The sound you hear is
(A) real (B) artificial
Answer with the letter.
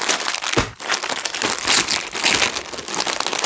A